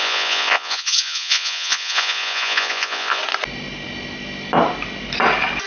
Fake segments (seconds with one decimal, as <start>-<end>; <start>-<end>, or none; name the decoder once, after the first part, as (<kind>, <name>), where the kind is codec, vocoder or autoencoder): 0.0-3.2 (vocoder, Vocos)